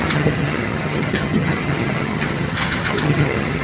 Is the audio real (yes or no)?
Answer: no